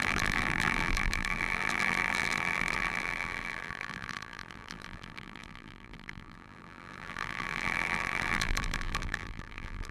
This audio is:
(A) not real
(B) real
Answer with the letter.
A